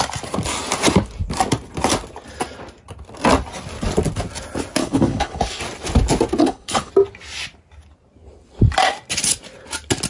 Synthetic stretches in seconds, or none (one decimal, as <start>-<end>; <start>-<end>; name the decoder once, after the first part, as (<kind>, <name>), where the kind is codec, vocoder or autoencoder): 4.8-5.6 (codec, HILCodec); 6.4-6.9